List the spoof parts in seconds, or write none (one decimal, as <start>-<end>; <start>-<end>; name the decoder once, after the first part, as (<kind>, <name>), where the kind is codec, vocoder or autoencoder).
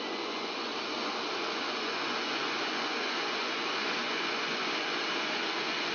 0.0-0.7 (vocoder, Vocos); 1.4-5.9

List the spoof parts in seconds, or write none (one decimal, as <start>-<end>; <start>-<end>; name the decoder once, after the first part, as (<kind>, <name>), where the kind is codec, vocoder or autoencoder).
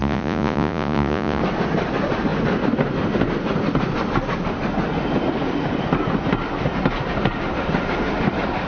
0.0-1.4 (vocoder, Vocos)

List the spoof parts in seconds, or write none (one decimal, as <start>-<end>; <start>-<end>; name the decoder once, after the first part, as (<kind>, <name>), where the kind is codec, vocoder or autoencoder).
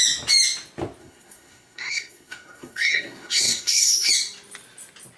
1.0-4.1 (codec, SNAC)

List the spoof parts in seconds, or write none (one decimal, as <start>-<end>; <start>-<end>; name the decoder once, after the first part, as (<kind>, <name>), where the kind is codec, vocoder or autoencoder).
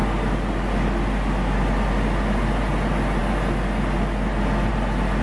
none